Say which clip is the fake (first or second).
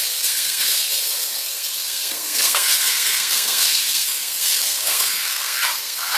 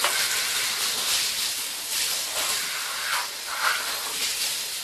first